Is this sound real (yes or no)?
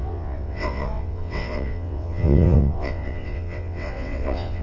no